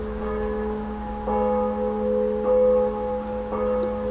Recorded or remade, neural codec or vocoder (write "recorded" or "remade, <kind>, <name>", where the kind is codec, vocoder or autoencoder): recorded